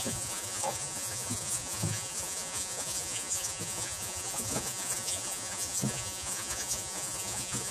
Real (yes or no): no